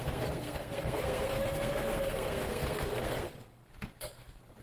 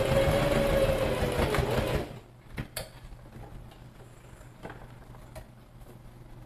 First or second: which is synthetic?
first